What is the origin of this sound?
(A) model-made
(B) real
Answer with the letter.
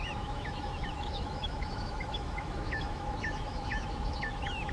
A